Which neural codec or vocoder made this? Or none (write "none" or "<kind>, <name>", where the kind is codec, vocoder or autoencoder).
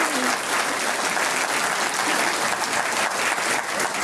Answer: none